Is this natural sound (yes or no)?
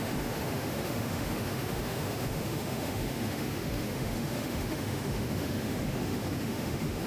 no